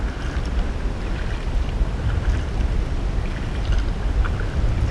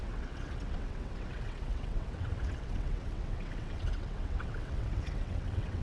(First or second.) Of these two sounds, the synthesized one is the second